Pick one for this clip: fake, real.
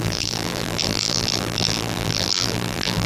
fake